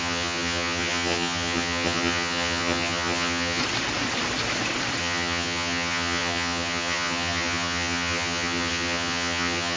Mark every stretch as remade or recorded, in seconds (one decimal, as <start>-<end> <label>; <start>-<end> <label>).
0.0-3.6 remade; 3.6-5.0 recorded; 5.0-9.8 remade